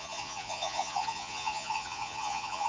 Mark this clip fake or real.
fake